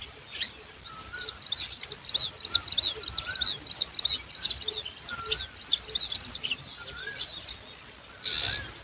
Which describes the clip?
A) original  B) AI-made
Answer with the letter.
A